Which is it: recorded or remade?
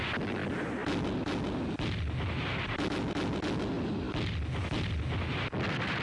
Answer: recorded